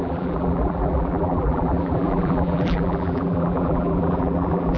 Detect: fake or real fake